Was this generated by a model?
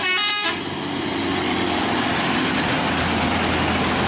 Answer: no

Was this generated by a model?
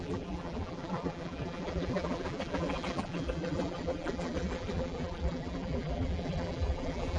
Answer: yes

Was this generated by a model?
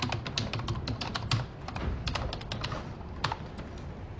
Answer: no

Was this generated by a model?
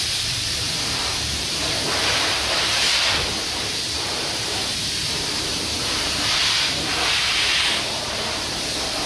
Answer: yes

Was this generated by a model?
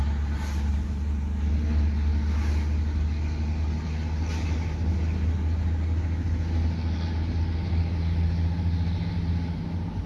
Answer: no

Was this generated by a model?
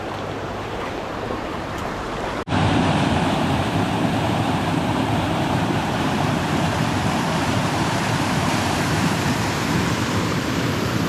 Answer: yes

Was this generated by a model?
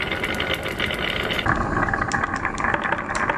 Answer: no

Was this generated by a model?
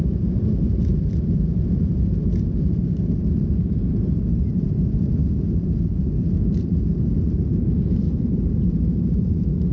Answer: yes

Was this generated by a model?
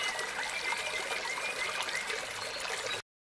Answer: no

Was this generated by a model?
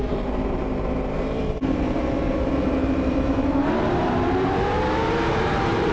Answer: yes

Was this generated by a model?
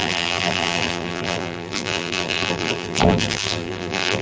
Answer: yes